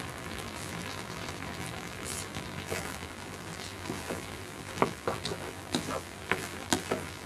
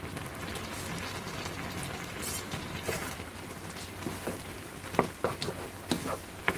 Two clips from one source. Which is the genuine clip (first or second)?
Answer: second